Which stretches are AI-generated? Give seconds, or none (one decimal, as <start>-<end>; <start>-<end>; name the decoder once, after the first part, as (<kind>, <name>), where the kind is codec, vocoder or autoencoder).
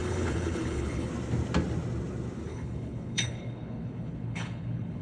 0.0-1.1 (codec, HILCodec); 2.5-5.0